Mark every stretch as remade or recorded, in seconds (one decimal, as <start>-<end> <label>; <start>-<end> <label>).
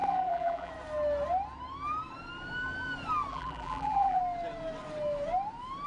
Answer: 0.0-0.7 remade; 0.7-3.3 recorded; 3.3-4.2 remade; 4.2-5.9 recorded